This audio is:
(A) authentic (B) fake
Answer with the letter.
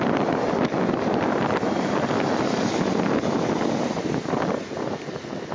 A